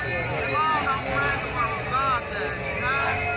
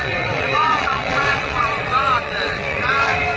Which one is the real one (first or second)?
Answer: first